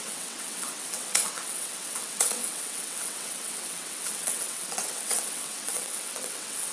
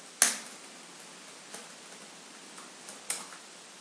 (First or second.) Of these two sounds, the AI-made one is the first